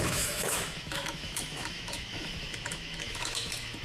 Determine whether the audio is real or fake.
fake